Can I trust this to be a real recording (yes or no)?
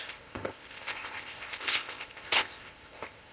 no